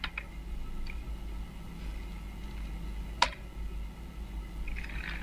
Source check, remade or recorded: recorded